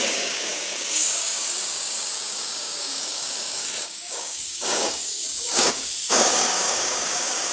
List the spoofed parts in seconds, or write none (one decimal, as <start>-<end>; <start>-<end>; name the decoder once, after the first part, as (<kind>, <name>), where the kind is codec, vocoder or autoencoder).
0.0-7.5 (codec, DAC)